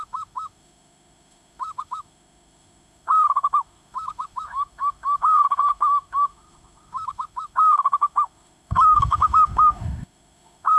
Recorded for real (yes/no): no